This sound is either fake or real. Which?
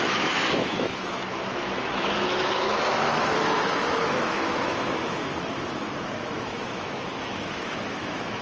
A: fake